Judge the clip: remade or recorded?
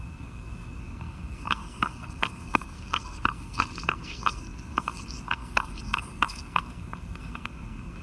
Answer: remade